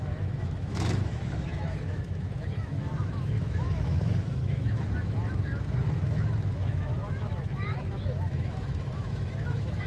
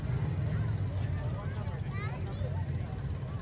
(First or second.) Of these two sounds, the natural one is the second